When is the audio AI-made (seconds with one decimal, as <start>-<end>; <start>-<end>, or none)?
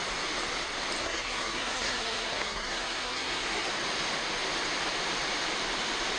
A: 1.0-3.7